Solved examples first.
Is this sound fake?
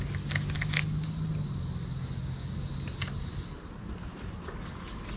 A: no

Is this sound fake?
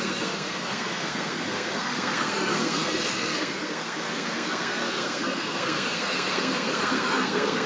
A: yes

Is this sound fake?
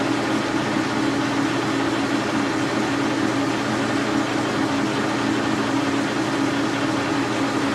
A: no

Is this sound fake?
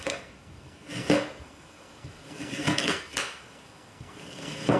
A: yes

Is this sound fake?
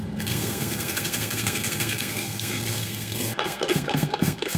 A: yes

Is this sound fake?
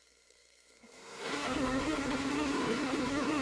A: yes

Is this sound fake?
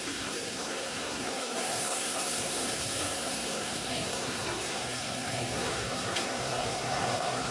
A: yes